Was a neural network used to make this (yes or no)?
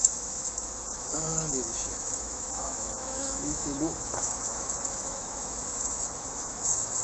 yes